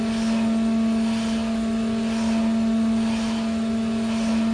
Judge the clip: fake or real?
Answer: real